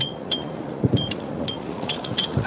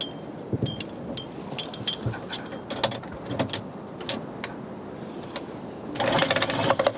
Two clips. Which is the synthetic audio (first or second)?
first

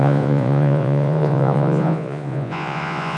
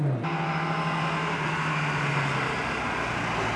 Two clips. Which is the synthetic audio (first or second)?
first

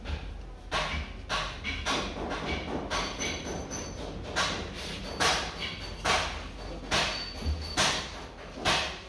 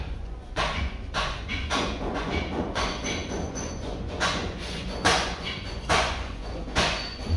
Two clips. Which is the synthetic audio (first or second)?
second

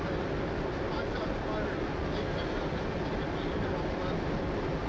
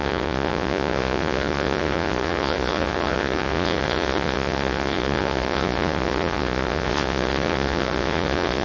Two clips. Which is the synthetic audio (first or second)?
second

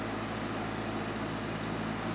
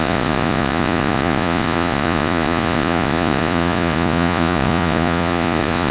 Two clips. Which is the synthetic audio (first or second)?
second